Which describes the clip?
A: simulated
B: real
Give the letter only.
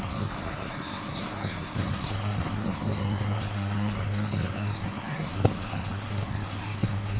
A